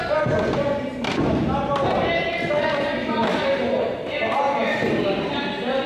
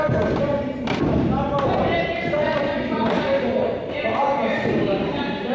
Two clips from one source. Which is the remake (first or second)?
second